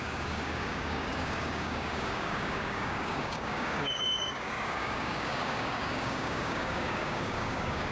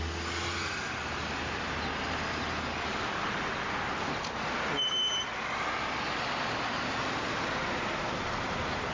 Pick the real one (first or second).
second